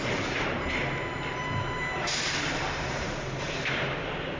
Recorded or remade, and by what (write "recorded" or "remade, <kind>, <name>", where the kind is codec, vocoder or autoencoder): remade, vocoder, BigVGAN v2